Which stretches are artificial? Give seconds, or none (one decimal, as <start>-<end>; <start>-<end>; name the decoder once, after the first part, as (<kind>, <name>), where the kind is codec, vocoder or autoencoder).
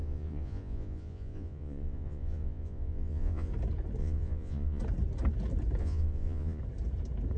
0.0-3.5 (vocoder, Vocos); 4.0-4.8; 5.8-6.6